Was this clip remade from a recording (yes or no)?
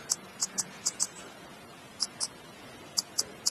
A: yes